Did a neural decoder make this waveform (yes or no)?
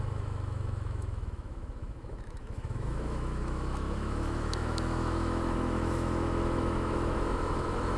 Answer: yes